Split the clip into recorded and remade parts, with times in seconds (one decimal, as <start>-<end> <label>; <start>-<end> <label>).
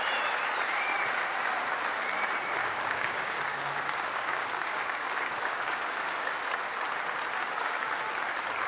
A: 0.0-2.6 recorded; 2.6-6.4 remade; 6.4-7.4 recorded; 7.4-7.9 remade; 7.9-8.7 recorded